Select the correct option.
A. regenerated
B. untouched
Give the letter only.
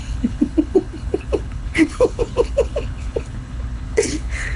A